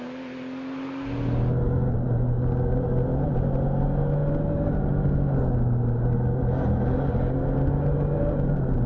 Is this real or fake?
real